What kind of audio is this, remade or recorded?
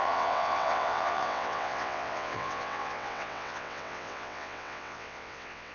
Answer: remade